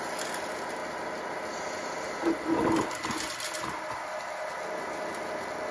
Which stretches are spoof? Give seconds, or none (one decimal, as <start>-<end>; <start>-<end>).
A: none